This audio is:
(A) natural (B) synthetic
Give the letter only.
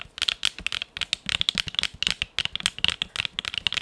A